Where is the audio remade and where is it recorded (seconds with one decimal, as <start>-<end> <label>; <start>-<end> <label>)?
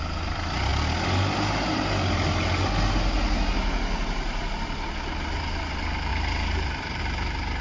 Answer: 0.0-6.1 recorded; 6.1-7.0 remade; 7.0-7.6 recorded